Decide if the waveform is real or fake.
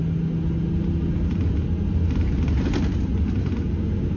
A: real